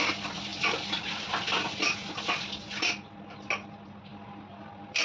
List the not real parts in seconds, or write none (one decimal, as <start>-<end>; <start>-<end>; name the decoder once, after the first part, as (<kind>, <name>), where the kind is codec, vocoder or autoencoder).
4.1-5.0 (vocoder, BigVGAN v2)